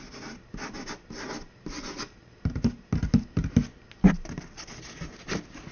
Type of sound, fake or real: real